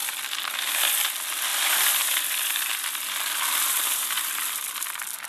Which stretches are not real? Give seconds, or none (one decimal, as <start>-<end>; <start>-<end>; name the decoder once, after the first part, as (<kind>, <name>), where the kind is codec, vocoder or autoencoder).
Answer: 0.0-1.1 (vocoder, BigVGAN v2); 1.5-4.7